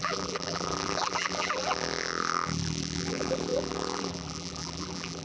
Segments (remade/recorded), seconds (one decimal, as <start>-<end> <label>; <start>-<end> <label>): 0.0-5.2 remade